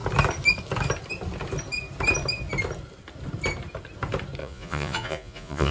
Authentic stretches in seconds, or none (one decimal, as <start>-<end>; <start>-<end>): 0.0-4.4